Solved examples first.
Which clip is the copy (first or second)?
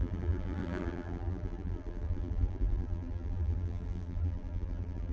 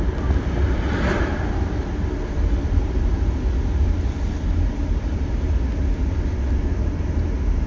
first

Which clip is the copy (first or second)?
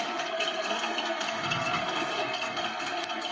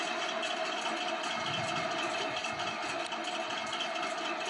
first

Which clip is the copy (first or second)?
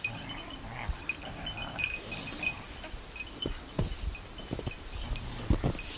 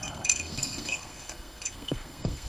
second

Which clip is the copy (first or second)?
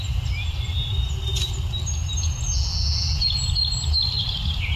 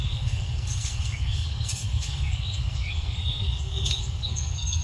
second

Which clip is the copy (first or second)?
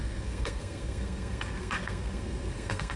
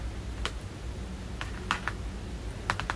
first